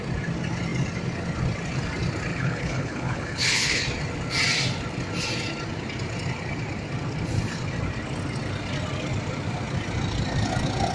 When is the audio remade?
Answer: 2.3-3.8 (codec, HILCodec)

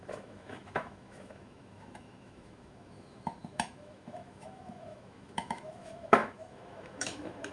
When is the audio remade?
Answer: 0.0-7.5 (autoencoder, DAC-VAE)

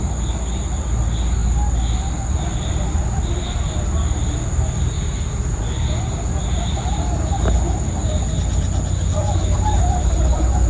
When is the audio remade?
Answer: 9.2-10.7 (vocoder, BigVGAN v2)